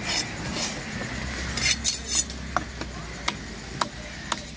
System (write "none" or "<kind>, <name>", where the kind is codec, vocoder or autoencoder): none